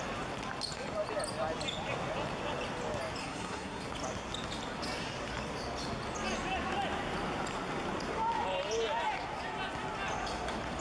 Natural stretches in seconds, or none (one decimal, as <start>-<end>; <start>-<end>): 0.0-3.2; 3.8-10.8